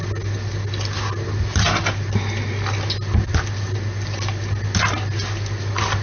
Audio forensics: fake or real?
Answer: real